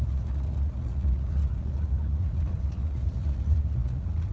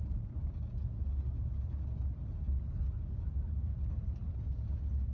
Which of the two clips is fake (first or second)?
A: first